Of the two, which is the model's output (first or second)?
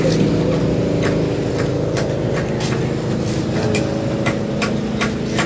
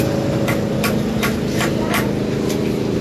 second